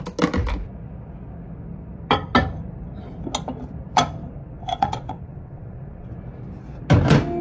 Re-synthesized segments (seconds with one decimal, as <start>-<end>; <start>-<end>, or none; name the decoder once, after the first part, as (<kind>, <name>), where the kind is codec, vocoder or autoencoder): 4.4-6.1 (vocoder, WaveNeXt)